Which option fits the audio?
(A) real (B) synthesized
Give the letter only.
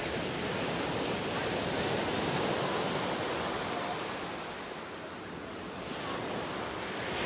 A